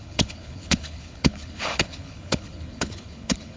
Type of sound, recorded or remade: remade